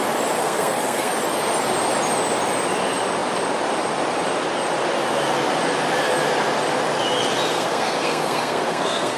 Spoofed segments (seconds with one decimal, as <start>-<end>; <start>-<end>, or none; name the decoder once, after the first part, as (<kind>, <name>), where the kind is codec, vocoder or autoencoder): 0.4-1.1 (codec, SNAC); 7.5-9.2